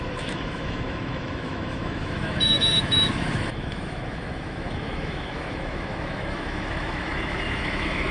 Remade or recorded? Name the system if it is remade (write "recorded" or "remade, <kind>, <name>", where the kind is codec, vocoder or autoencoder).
remade, autoencoder, DAC-VAE